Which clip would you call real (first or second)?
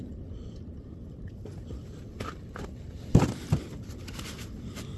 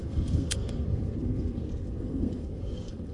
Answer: first